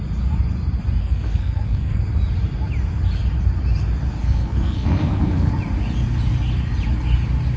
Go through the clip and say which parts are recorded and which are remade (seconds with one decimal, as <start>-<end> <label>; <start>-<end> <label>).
0.0-1.0 recorded; 1.0-2.0 remade; 2.0-4.2 recorded; 4.2-5.5 remade; 5.5-7.6 recorded